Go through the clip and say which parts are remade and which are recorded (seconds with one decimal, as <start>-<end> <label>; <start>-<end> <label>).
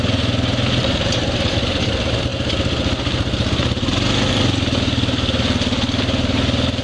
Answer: 0.0-0.8 recorded; 0.8-1.9 remade; 1.9-6.8 recorded